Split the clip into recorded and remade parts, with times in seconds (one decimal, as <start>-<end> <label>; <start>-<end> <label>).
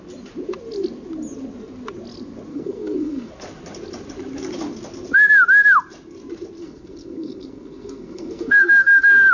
0.0-2.5 recorded; 2.5-3.3 remade; 3.3-6.6 recorded; 6.6-9.3 remade